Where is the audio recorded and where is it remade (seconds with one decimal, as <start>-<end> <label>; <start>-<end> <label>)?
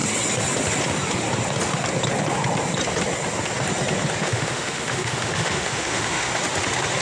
0.0-4.2 recorded; 4.2-6.3 remade; 6.3-7.0 recorded